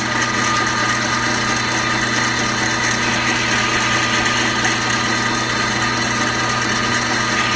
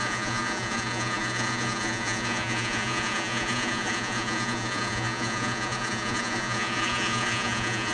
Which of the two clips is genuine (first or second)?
first